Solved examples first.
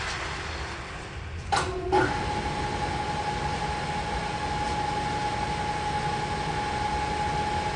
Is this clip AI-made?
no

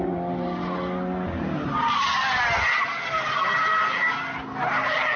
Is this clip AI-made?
no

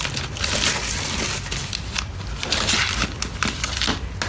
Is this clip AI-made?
no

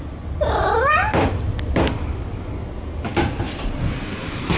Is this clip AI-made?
no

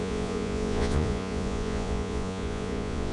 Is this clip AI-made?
yes